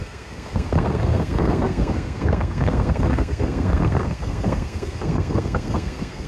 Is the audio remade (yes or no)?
yes